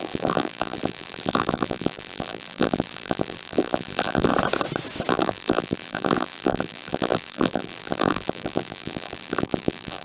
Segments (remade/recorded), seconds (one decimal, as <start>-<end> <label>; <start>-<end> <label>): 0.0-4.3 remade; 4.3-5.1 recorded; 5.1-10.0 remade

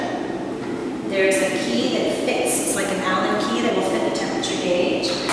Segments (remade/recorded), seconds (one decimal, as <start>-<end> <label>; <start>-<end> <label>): 0.0-0.8 recorded; 0.8-3.7 remade; 3.7-5.3 recorded

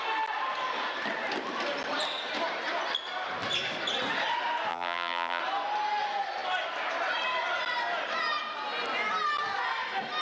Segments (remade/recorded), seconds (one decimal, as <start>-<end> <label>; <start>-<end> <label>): 0.0-4.7 recorded; 4.7-5.4 remade; 5.4-10.2 recorded